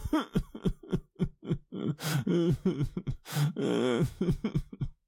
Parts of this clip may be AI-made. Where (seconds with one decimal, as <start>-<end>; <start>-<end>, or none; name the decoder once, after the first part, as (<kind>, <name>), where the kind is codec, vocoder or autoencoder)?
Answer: 2.3-5.1 (autoencoder, DAC-VAE)